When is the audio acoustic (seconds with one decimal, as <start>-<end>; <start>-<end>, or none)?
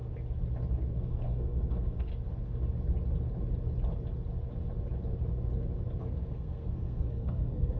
0.0-0.9; 2.1-6.0